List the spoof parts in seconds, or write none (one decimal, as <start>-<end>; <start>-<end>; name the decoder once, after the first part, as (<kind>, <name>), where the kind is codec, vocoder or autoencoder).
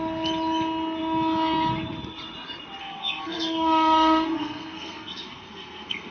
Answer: 2.8-6.1 (codec, SNAC)